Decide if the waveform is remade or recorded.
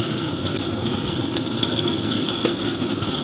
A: remade